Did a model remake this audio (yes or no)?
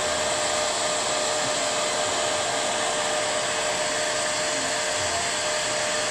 no